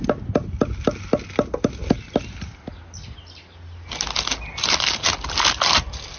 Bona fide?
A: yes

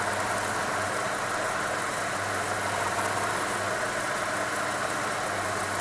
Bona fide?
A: yes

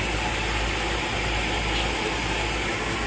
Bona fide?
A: yes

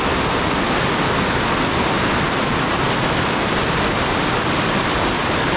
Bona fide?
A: yes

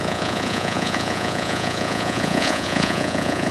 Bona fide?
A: no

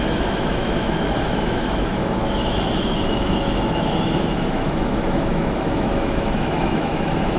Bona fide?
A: no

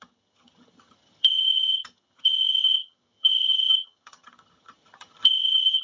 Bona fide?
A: no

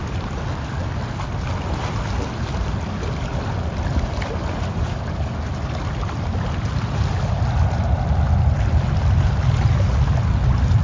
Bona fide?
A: yes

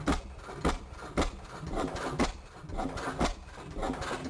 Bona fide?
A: yes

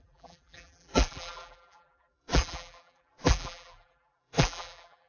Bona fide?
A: no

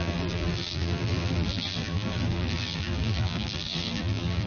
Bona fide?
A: no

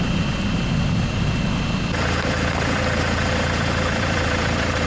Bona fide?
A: no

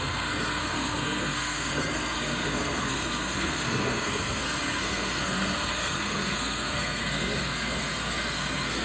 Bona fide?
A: no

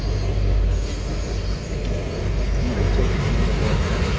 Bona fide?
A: yes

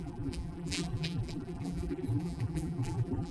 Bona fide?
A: no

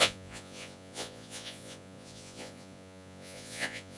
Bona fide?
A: no